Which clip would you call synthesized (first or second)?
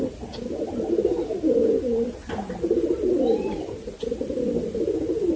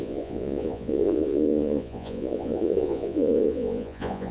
second